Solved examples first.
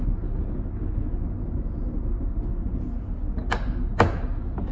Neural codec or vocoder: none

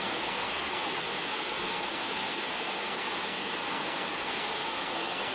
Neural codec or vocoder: codec, SNAC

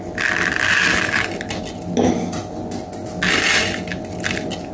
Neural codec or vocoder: none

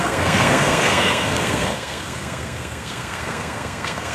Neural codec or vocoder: codec, SNAC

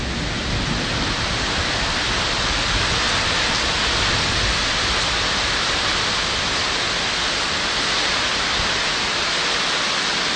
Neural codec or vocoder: none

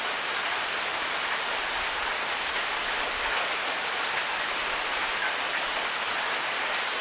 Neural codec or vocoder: none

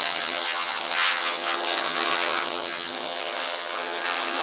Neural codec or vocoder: vocoder, HiFi-GAN